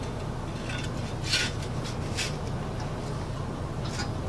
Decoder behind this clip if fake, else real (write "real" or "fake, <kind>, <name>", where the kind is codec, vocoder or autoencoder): real